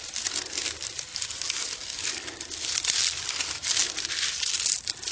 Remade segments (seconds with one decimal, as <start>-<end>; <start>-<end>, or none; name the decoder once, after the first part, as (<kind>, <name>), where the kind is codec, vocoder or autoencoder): none